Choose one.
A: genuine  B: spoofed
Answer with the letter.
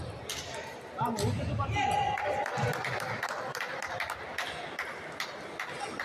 A